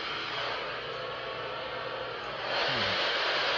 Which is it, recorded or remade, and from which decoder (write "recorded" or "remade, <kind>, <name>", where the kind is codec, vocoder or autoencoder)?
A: recorded